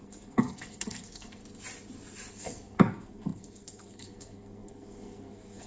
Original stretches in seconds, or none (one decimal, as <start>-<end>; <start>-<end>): 1.4-2.3